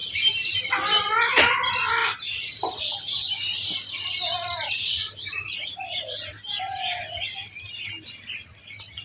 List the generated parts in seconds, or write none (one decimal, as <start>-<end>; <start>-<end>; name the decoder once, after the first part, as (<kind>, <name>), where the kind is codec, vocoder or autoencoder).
0.0-0.6 (vocoder, BigVGAN v2); 2.0-2.8; 4.2-7.0